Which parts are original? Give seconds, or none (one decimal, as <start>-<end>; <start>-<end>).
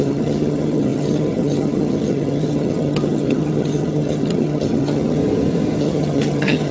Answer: 5.2-5.8